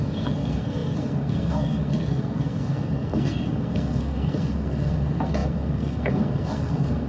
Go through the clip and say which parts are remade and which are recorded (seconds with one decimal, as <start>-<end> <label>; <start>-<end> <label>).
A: 0.0-7.1 remade